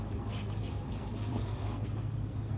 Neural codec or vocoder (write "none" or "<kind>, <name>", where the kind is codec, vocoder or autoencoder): codec, SNAC